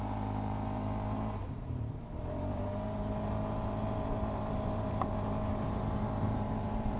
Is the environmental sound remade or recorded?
remade